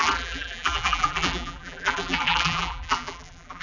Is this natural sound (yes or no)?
no